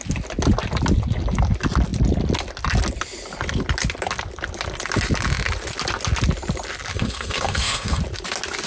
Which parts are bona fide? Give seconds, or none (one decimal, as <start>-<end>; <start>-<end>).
0.0-6.9; 8.0-8.7